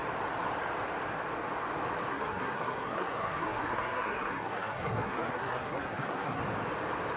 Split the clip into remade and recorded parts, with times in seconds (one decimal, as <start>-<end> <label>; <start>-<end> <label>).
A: 0.0-2.1 recorded; 2.1-6.4 remade; 6.4-7.2 recorded